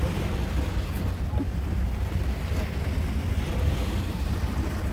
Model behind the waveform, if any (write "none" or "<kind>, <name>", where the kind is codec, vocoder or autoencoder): none